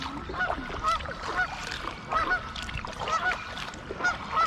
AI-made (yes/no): no